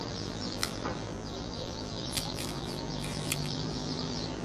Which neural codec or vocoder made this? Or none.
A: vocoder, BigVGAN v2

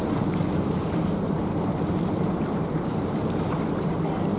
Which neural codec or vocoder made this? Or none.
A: vocoder, BigVGAN v2